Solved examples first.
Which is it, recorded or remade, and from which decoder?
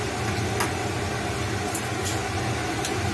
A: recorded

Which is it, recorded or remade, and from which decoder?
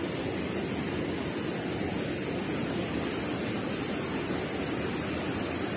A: recorded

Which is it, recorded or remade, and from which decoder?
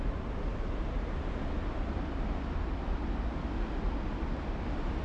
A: recorded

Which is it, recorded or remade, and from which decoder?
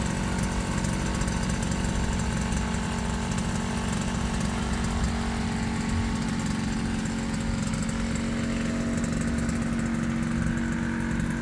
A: recorded